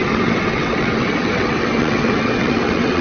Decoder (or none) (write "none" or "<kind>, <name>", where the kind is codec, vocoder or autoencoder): vocoder, WaveNeXt